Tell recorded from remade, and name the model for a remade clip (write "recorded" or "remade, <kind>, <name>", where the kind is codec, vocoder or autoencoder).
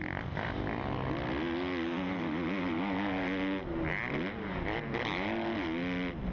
recorded